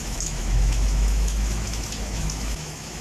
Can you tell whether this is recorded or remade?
remade